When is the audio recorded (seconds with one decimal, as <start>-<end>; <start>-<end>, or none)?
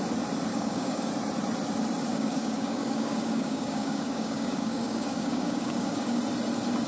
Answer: 0.0-0.5; 1.1-2.1; 6.2-6.9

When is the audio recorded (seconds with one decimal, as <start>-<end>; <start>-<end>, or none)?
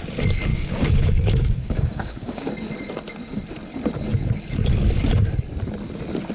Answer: 0.0-0.5; 2.5-6.3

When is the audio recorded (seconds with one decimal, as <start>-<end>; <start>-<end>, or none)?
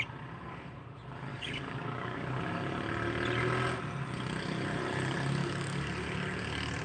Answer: 0.0-1.3; 2.4-5.4; 5.9-6.8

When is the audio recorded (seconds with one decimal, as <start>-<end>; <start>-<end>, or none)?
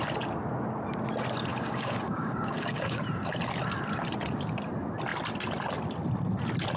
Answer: 0.0-1.5; 3.0-6.8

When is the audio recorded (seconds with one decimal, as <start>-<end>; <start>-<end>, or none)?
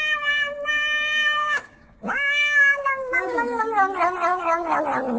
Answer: 0.0-1.4; 3.6-4.3; 4.8-5.2